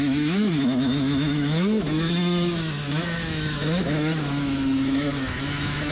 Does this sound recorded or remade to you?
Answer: remade